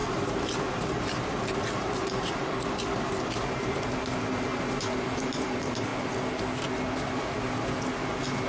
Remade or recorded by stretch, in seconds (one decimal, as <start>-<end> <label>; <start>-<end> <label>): 0.0-2.4 remade; 2.4-3.6 recorded; 3.6-5.9 remade; 5.9-8.5 recorded